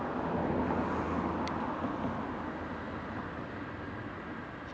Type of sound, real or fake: real